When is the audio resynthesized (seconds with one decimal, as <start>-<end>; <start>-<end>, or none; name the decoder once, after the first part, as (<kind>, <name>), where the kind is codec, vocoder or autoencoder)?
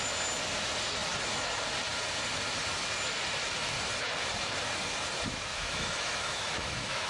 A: 5.5-7.1 (autoencoder, DAC-VAE)